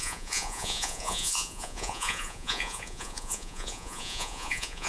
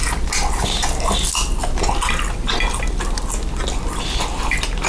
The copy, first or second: first